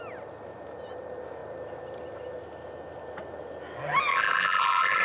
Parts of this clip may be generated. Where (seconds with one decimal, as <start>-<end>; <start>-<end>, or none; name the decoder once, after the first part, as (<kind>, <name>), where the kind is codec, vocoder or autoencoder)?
4.1-5.0 (vocoder, BigVGAN v2)